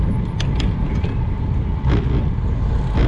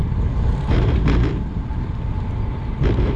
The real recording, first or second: first